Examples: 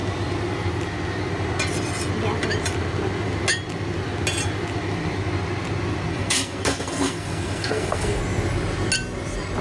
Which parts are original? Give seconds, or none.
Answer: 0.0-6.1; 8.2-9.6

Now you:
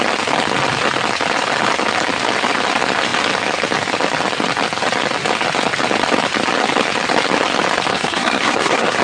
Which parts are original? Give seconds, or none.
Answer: 0.0-7.9

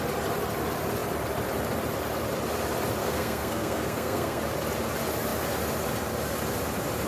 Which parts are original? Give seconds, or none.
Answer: 0.0-3.0; 4.4-7.1

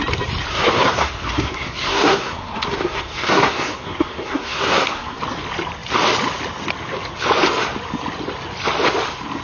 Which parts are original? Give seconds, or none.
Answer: 0.0-0.5; 5.2-9.4

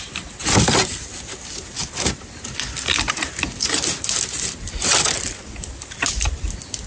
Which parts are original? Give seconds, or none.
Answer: 0.0-6.9

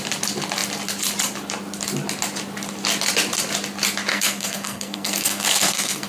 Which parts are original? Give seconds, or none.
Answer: 0.0-4.1